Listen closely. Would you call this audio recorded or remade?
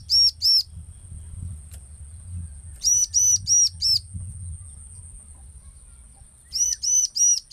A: recorded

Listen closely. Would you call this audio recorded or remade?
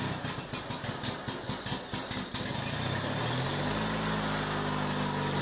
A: recorded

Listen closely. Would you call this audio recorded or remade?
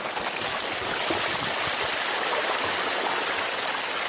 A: recorded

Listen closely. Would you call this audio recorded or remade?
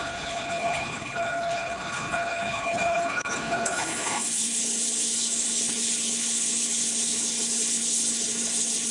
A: remade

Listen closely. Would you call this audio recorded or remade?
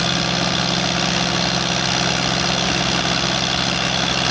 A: recorded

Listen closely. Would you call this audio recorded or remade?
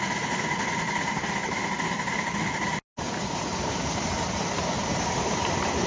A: recorded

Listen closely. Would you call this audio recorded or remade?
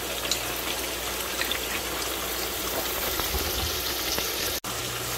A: recorded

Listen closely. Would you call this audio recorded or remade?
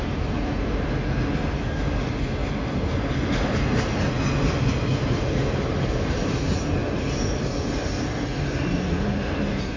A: recorded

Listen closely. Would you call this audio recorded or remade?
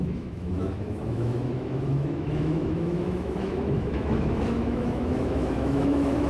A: remade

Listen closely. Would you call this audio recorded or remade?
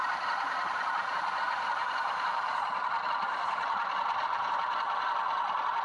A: remade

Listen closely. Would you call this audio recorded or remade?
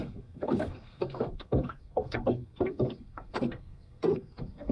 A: remade